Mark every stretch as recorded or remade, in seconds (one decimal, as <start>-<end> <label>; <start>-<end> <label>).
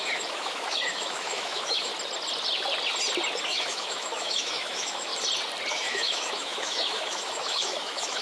0.0-1.9 remade; 1.9-3.4 recorded; 3.4-5.1 remade; 5.1-5.7 recorded; 5.7-8.2 remade